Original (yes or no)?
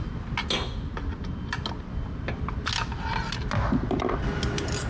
yes